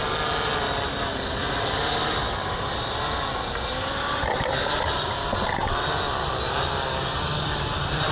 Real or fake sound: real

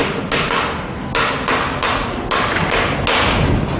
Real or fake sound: real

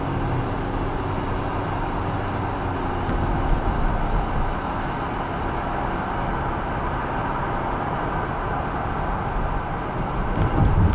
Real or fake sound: real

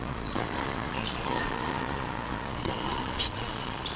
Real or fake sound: fake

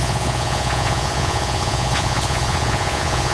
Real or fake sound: fake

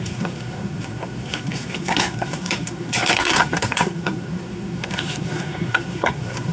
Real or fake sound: fake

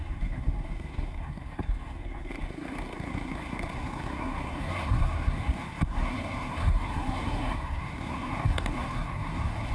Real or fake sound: fake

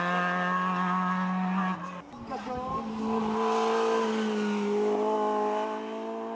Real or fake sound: real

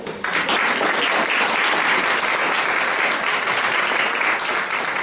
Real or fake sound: real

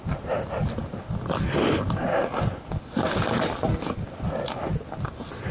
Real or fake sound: real